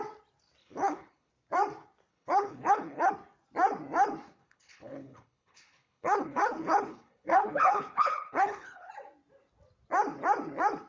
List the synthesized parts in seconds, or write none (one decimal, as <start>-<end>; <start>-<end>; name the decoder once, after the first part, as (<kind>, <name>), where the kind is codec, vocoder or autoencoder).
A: 0.6-1.3 (codec, HILCodec); 2.1-3.1; 4.4-8.9